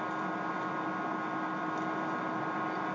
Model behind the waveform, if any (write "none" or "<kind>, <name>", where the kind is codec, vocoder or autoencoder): none